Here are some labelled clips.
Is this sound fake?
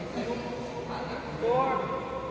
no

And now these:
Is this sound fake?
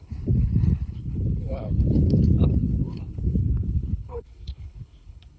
yes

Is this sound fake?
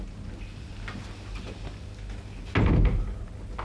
no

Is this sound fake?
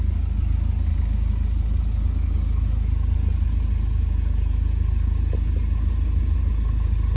no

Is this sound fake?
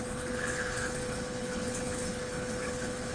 yes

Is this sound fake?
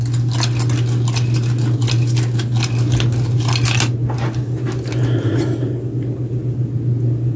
no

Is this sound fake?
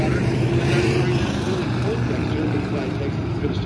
no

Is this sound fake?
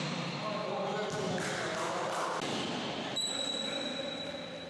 no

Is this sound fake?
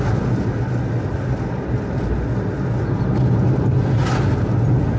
no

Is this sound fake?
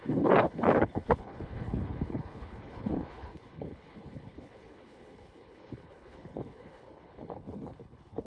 yes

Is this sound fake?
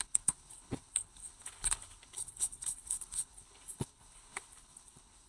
yes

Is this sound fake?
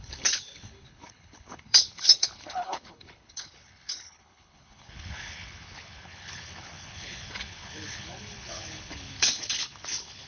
yes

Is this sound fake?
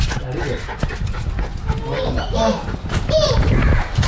no